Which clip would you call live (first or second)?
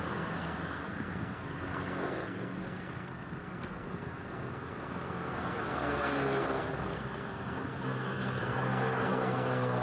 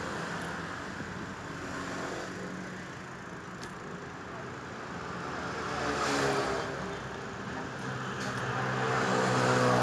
second